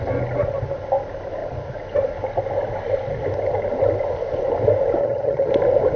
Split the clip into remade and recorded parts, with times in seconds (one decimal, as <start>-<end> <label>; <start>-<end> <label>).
0.0-5.0 recorded; 5.0-5.5 remade; 5.5-6.0 recorded